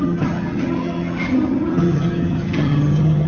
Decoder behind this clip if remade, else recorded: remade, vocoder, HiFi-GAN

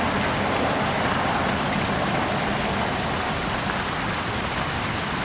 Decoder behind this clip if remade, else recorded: recorded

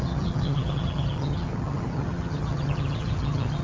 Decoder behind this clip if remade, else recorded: remade, vocoder, HiFi-GAN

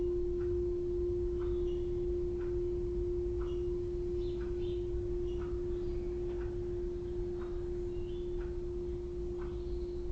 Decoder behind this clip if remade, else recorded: recorded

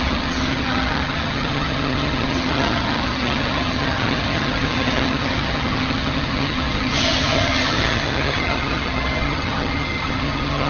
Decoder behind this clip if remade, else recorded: remade, vocoder, HiFi-GAN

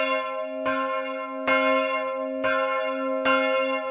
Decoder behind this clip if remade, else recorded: recorded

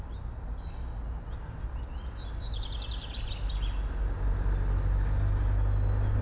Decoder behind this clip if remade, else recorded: recorded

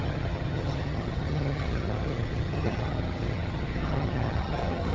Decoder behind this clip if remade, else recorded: remade, vocoder, HiFi-GAN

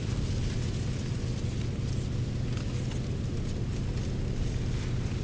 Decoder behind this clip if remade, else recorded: recorded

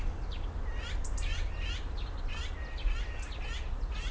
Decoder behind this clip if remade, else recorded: recorded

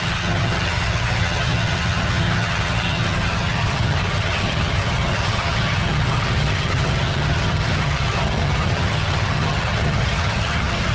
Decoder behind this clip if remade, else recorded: remade, vocoder, HiFi-GAN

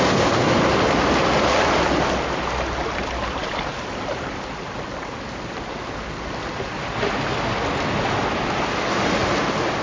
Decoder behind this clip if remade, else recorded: recorded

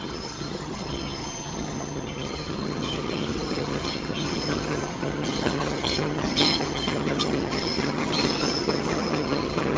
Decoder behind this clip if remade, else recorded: remade, vocoder, HiFi-GAN